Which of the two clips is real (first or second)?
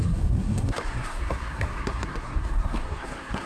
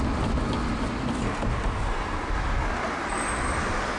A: second